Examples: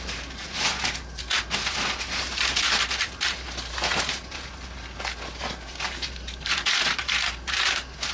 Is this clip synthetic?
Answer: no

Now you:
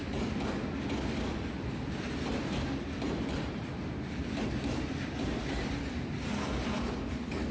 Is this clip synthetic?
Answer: no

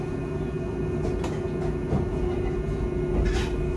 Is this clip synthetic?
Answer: no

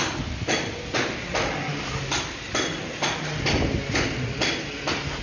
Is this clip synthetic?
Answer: no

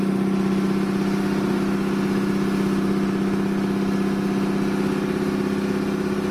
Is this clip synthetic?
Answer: no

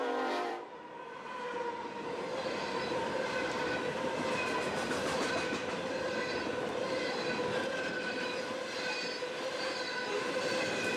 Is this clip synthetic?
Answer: yes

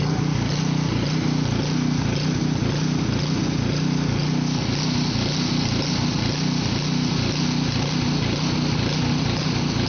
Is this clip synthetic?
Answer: no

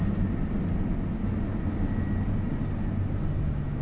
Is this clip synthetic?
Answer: no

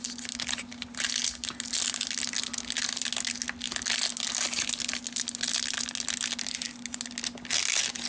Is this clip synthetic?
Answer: no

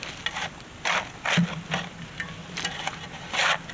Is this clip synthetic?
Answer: no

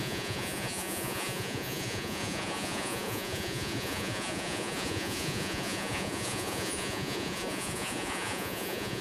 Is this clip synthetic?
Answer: yes